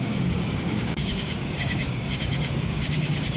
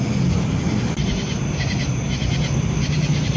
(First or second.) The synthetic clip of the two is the first